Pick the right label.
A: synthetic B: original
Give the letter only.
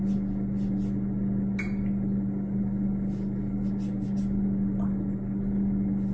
B